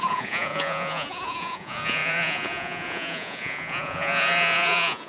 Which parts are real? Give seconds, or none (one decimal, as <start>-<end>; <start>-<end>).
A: none